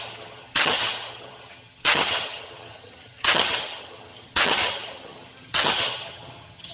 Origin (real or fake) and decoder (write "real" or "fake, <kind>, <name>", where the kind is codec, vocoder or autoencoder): fake, vocoder, HiFi-GAN